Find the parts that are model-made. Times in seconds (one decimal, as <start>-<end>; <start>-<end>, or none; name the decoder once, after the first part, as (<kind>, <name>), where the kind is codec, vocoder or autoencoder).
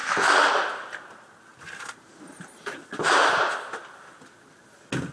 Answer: none